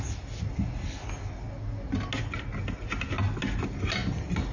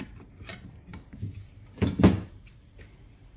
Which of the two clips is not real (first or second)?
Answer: second